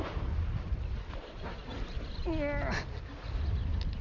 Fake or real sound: real